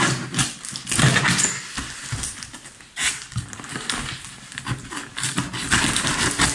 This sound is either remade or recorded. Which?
recorded